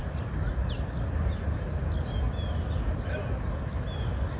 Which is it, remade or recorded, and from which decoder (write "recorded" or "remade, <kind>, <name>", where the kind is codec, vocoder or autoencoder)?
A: recorded